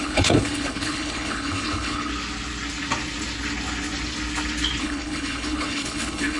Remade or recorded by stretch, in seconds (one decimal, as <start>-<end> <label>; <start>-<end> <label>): 0.0-2.1 remade; 2.1-4.8 recorded; 4.8-6.4 remade